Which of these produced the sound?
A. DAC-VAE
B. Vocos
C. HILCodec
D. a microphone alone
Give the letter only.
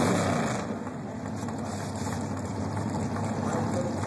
D